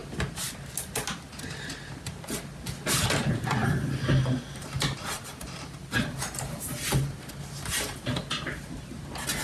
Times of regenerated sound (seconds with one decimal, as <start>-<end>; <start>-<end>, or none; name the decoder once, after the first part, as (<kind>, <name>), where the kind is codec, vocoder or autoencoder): 3.6-7.3 (vocoder, BigVGAN v2)